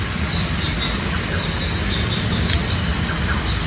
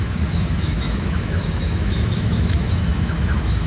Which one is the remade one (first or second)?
second